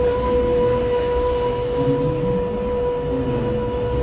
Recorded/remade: recorded